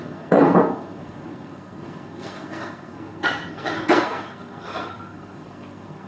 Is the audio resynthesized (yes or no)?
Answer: yes